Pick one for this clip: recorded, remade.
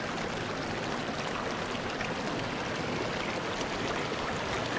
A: recorded